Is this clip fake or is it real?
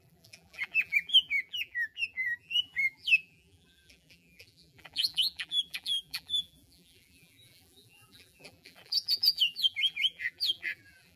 fake